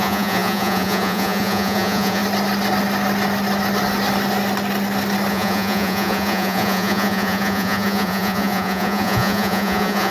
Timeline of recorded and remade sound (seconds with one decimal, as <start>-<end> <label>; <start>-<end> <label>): 0.0-2.2 remade; 2.2-5.3 recorded; 5.3-10.1 remade